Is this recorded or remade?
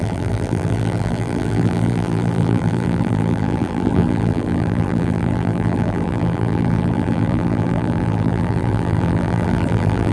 remade